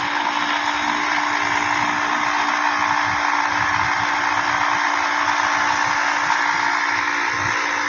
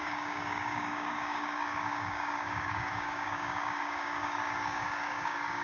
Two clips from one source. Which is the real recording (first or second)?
first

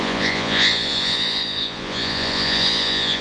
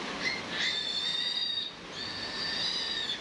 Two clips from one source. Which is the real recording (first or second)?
second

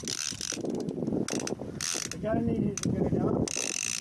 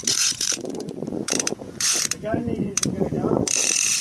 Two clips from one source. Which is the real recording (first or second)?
first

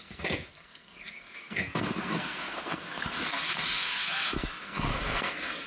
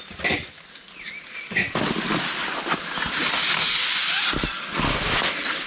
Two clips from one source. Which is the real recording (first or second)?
second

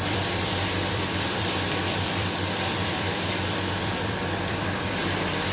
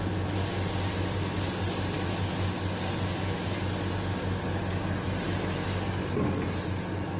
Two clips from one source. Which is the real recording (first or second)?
second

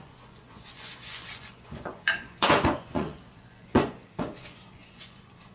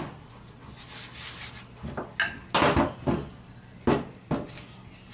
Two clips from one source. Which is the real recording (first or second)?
second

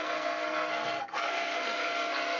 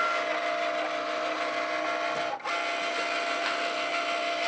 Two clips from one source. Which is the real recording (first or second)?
second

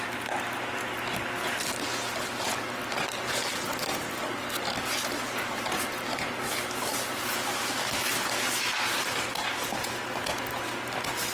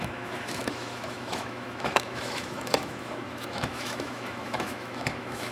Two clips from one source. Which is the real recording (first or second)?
first